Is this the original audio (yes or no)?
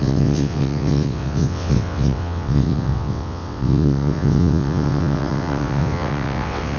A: no